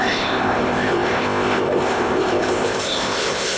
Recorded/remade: remade